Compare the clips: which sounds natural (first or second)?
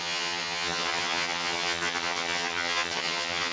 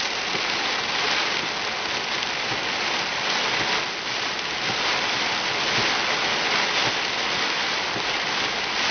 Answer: second